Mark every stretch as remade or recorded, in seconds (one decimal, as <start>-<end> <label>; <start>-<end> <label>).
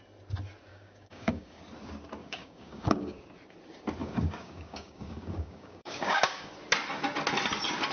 0.0-0.7 recorded; 0.7-1.6 remade; 1.6-2.2 recorded; 2.2-3.2 remade; 3.2-4.0 recorded; 4.0-6.5 remade; 6.5-7.9 recorded